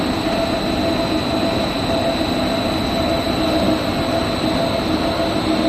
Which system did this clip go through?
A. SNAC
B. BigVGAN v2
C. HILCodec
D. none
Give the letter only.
D